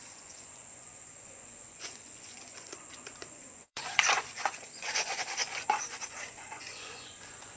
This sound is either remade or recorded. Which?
remade